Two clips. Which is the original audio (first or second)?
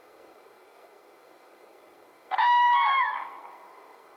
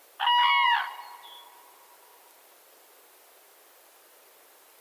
second